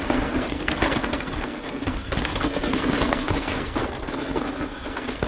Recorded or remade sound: remade